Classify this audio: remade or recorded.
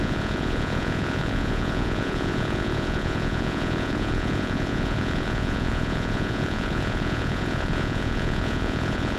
remade